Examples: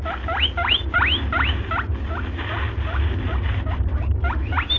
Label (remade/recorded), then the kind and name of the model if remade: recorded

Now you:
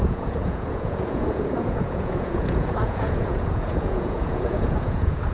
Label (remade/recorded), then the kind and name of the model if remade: remade, vocoder, Vocos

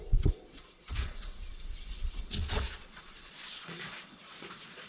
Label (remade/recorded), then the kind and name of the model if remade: remade, vocoder, Vocos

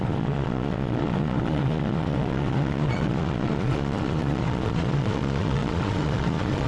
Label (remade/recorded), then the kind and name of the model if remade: remade, vocoder, Vocos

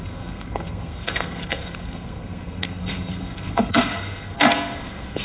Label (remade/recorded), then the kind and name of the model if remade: remade, codec, SNAC